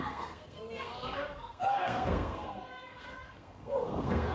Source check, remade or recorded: remade